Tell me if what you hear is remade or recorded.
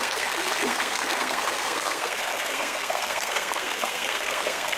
remade